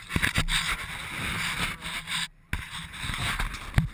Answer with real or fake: real